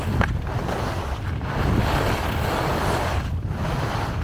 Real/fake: real